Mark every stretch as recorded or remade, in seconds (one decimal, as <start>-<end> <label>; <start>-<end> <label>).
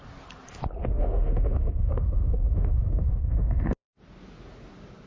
0.0-0.8 recorded; 0.8-3.9 remade; 3.9-5.1 recorded